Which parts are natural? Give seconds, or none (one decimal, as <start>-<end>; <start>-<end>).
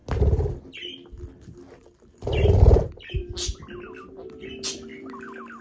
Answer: 0.0-5.6